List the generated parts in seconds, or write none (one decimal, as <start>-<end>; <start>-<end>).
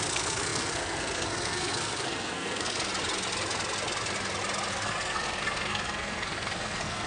0.0-2.9; 4.7-7.1